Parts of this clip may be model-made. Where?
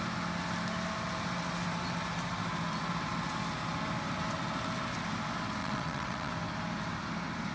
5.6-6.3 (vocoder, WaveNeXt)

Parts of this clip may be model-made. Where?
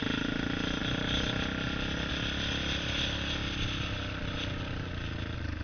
none